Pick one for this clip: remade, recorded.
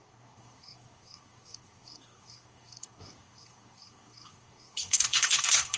remade